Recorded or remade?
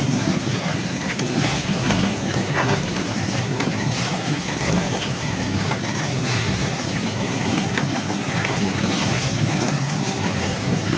remade